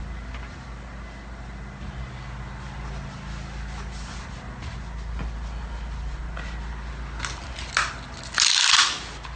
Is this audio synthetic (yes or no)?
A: no